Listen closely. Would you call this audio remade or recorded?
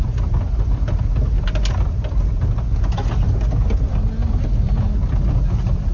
recorded